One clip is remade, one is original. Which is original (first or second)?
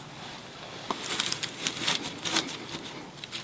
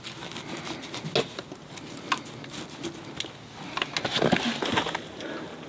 second